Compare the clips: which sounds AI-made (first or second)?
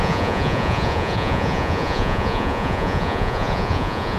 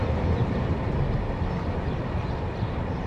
first